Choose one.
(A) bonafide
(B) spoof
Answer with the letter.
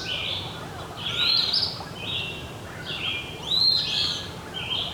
A